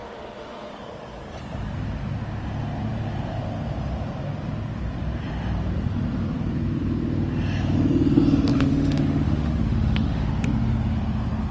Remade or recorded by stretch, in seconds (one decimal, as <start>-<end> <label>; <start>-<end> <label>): 0.0-0.7 remade; 0.7-8.5 recorded; 8.5-10.3 remade; 10.3-11.5 recorded